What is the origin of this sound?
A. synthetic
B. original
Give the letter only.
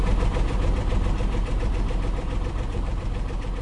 A